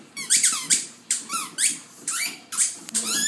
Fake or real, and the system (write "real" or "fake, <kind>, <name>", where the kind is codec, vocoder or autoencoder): fake, vocoder, BigVGAN v2